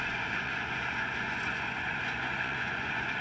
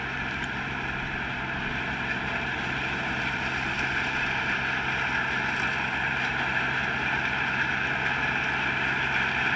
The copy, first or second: first